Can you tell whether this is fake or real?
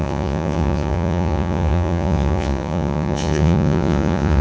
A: fake